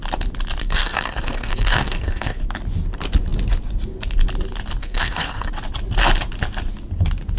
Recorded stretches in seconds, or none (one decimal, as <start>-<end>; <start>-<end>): 0.0-0.6; 2.4-4.8; 5.5-7.4